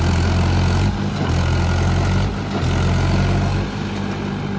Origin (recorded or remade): recorded